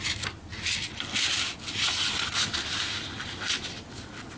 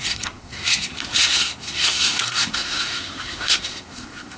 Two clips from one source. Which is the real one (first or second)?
first